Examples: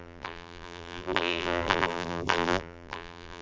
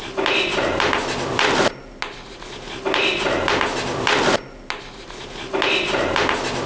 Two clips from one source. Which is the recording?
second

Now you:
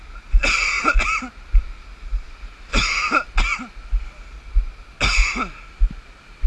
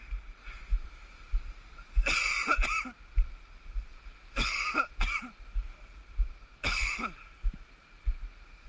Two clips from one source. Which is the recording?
first